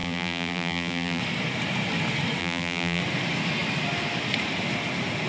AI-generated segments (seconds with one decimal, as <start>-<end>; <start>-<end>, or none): 0.0-1.2; 2.4-3.0